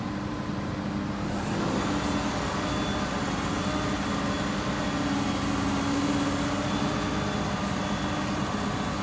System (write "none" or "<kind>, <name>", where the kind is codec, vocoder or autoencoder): none